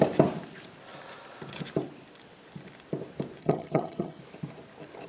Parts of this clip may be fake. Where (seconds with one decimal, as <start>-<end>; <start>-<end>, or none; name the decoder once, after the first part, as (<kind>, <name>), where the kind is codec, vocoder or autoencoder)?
3.4-4.2 (vocoder, HiFi-GAN)